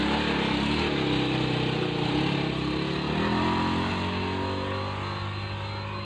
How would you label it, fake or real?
real